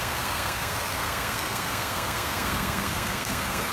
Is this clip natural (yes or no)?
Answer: no